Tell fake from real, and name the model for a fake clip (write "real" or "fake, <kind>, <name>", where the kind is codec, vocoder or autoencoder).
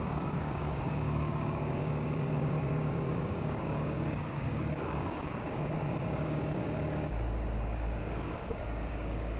fake, codec, DAC